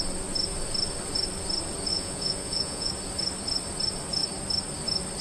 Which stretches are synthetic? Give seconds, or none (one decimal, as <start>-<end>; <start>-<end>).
1.9-2.9